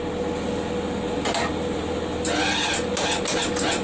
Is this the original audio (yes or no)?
yes